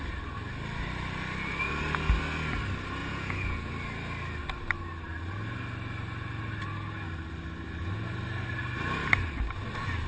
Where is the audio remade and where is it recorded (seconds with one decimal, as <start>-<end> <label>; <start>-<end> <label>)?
0.0-3.0 recorded; 3.0-3.7 remade; 3.7-10.1 recorded